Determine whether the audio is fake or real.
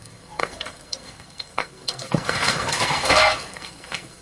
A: fake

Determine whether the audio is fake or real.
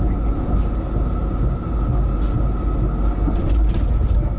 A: real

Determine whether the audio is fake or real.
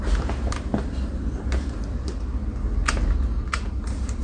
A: real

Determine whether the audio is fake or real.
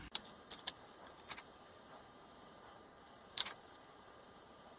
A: fake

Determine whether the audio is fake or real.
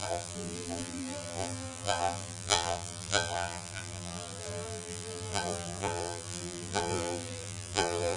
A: fake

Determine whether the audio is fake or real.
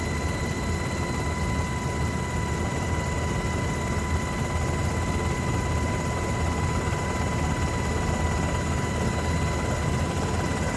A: real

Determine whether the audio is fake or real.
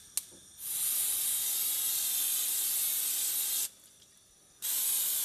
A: real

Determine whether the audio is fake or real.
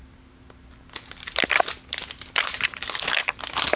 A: real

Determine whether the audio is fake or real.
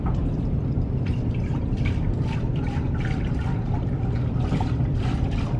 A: fake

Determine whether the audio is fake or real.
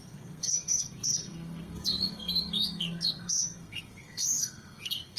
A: fake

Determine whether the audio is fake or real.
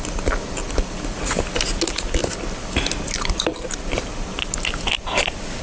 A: real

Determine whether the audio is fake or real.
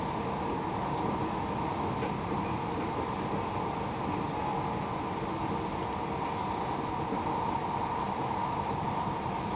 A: real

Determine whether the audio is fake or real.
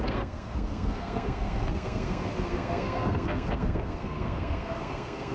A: fake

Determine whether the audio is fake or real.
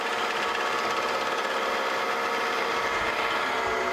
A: real